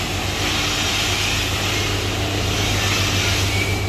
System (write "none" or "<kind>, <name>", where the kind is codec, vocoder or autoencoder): none